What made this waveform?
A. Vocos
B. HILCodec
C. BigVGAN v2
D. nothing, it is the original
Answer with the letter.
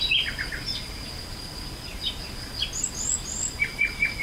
D